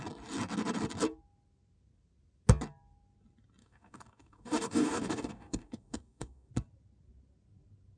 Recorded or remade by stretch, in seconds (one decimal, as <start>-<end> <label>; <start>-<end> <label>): 0.0-3.6 recorded; 3.6-6.5 remade; 6.5-8.0 recorded